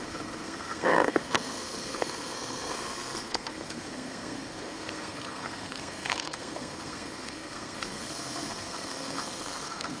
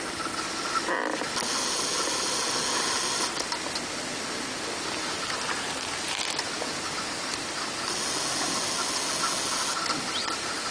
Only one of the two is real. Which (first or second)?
second